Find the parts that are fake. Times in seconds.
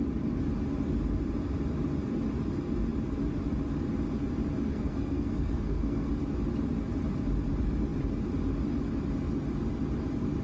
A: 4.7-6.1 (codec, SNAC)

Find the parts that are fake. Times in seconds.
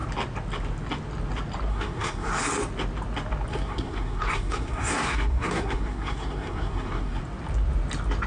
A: 1.7-2.3 (codec, SNAC); 3.5-7.2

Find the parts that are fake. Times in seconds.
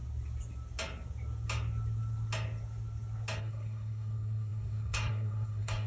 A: 3.4-5.9 (codec, SNAC)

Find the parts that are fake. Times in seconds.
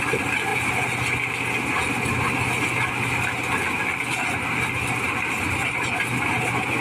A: none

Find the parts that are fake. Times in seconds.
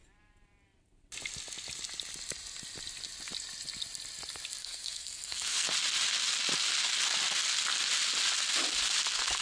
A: 4.6-5.7 (codec, SNAC)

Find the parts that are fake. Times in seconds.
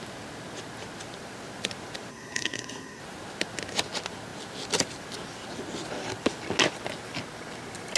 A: 2.1-3.0 (codec, SNAC)